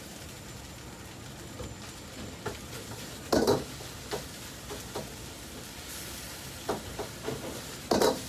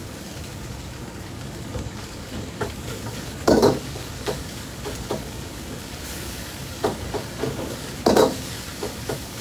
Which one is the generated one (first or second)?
second